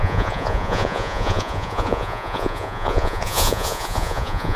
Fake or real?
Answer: fake